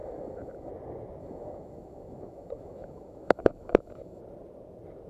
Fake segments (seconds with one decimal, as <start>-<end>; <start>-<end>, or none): 0.0-0.7; 1.2-4.2